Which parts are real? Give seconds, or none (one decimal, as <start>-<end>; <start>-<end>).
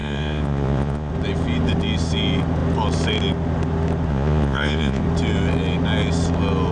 1.1-4.1; 5.0-6.7